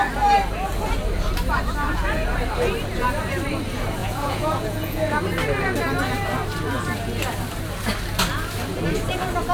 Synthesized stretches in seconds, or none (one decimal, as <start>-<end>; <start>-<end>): 4.0-5.2